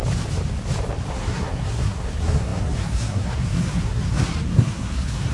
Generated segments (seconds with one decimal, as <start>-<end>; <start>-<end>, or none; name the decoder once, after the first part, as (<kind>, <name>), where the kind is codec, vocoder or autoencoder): 1.1-5.3 (codec, SNAC)